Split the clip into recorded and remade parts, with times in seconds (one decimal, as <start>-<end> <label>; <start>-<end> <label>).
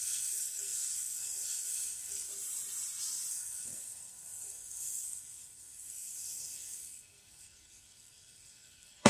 0.0-2.3 remade; 2.3-3.3 recorded; 3.3-9.1 remade